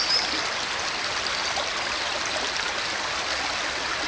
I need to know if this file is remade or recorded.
recorded